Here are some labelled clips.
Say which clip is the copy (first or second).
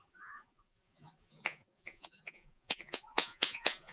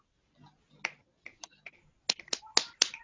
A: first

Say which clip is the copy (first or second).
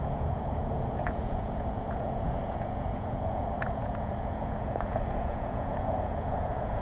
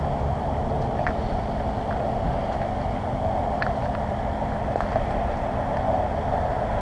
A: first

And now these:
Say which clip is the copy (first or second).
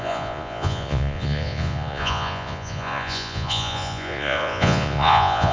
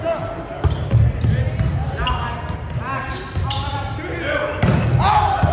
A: first